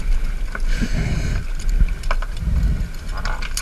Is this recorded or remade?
recorded